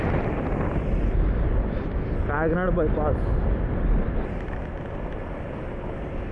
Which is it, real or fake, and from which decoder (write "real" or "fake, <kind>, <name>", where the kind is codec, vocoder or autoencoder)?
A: real